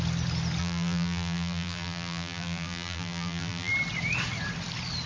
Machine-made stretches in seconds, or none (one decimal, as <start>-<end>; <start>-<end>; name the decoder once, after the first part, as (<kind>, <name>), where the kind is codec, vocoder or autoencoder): 0.6-3.7 (vocoder, BigVGAN v2)